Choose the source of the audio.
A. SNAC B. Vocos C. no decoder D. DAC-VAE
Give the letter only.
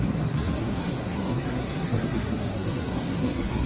A